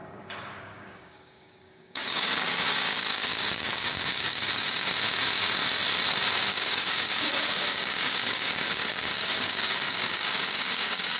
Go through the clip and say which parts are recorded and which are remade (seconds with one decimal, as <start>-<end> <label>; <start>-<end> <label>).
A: 0.0-4.9 remade; 4.9-6.5 recorded; 6.5-11.2 remade